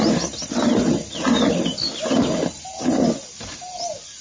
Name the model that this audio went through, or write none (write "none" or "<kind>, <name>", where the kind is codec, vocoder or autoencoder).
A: none